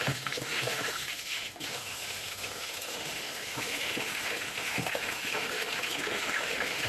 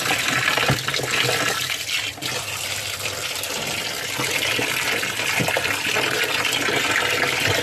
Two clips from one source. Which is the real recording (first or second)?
second